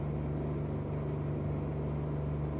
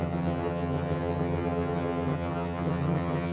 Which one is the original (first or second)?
first